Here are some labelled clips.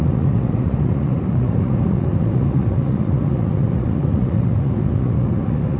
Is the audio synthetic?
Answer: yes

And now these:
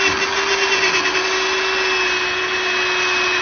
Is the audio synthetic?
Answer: no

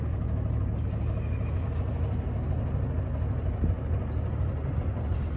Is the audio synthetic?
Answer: no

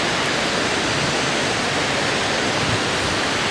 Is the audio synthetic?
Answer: no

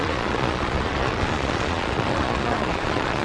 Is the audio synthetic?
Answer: yes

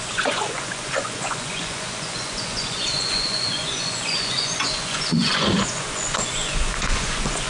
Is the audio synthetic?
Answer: yes